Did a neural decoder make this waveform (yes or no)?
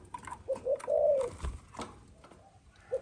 yes